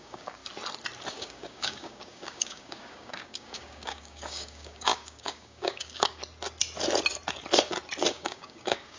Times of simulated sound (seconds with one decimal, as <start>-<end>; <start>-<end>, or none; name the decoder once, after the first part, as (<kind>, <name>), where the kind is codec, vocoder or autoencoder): 0.0-0.4 (codec, DAC); 1.1-6.2; 8.1-9.0